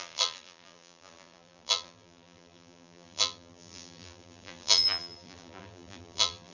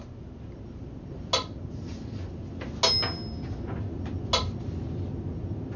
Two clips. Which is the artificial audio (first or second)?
first